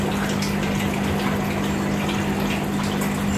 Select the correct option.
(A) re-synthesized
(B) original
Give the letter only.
B